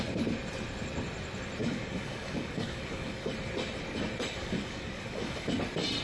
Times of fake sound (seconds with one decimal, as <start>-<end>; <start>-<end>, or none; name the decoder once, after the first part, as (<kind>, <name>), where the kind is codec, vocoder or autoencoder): 1.6-3.3 (codec, DAC); 4.4-5.5